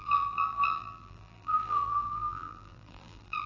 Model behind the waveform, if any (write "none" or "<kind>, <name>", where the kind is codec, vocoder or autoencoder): vocoder, BigVGAN v2